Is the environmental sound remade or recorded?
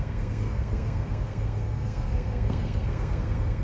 remade